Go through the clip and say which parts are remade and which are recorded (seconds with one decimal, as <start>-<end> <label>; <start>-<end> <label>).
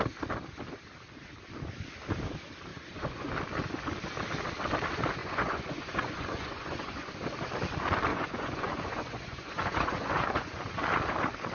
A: 0.0-2.7 recorded; 2.7-3.3 remade; 3.3-5.2 recorded; 5.2-7.1 remade; 7.1-8.1 recorded; 8.1-10.7 remade; 10.7-11.5 recorded